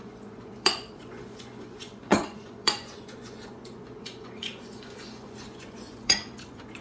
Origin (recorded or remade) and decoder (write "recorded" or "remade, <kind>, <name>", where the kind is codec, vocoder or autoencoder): remade, vocoder, Vocos